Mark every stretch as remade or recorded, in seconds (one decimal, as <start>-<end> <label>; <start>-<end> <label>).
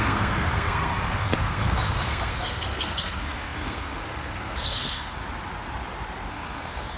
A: 0.0-5.2 remade; 5.2-6.3 recorded; 6.3-7.0 remade